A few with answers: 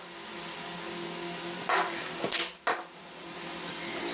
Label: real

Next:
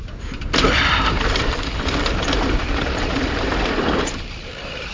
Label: fake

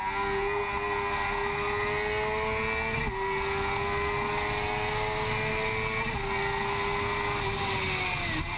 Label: real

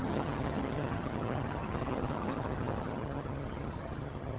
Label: fake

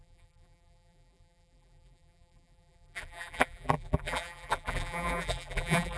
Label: fake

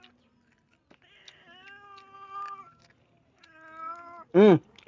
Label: real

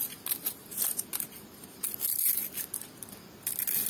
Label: real